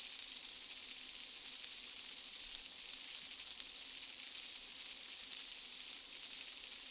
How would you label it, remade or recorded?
recorded